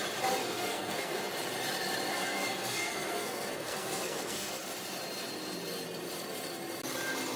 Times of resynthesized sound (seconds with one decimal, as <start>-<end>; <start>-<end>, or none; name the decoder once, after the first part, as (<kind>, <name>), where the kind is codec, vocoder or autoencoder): 0.4-1.2 (codec, SNAC); 2.1-4.6